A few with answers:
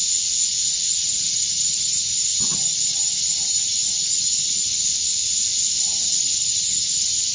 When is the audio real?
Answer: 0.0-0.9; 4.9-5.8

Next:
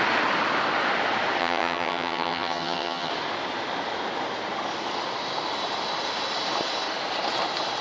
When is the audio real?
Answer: 0.0-1.4; 3.1-7.8

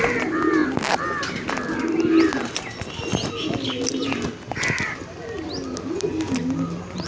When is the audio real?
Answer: 0.0-7.1

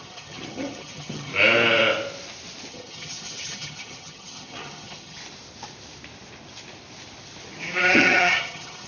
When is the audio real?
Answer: 1.3-2.7; 5.2-7.9

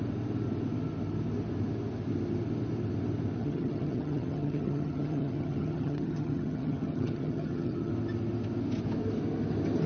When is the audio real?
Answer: 0.0-3.4; 7.9-9.9

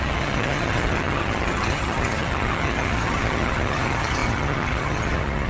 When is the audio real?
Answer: none

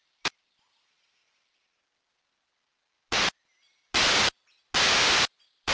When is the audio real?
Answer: 0.0-5.7

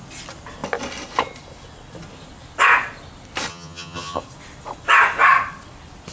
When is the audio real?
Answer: 0.0-3.5; 4.2-6.1